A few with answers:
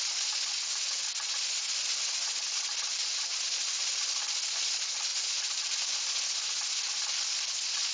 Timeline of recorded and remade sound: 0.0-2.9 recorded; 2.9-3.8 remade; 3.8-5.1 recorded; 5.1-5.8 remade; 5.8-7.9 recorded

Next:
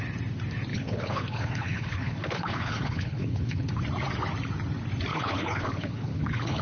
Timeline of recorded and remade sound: 0.0-0.7 recorded; 0.7-3.7 remade; 3.7-5.1 recorded; 5.1-6.6 remade

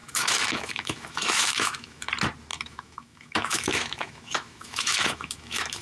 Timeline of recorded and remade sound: 0.0-2.1 remade; 2.1-2.5 recorded; 2.5-5.8 remade